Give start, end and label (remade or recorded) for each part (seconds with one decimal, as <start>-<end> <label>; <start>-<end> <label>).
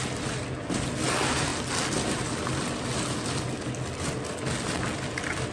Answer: 0.0-5.5 recorded